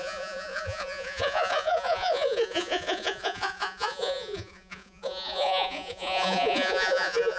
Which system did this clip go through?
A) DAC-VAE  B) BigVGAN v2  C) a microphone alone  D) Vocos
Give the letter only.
D